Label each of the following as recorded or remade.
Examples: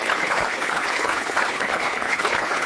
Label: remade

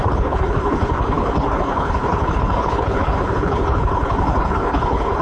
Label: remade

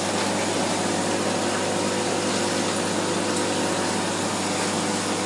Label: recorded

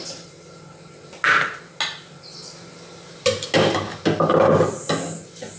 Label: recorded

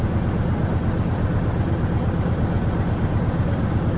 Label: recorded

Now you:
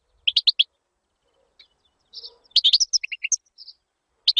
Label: recorded